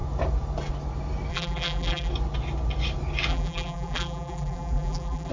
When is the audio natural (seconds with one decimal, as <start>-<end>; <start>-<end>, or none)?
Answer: 0.0-1.3; 2.1-3.3